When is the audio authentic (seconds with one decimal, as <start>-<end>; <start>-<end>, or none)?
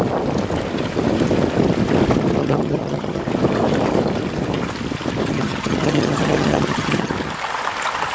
0.0-2.4; 3.2-5.3; 7.1-8.1